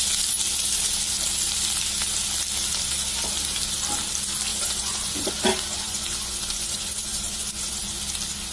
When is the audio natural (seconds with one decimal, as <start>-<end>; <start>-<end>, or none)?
0.0-4.5; 5.3-5.7; 8.0-8.5